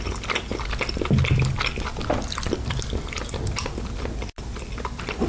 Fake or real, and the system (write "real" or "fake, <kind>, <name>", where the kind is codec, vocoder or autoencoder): real